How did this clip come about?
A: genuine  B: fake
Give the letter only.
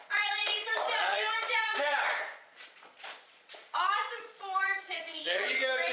B